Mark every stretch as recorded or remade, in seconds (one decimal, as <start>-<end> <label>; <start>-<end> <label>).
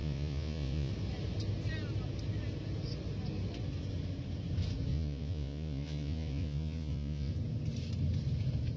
0.0-0.9 remade; 0.9-4.9 recorded; 4.9-7.3 remade; 7.3-8.8 recorded